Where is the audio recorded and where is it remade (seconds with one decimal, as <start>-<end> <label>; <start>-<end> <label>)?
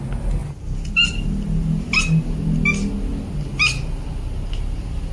0.0-5.1 recorded